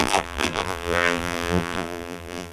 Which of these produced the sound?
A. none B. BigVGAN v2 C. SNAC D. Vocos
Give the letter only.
B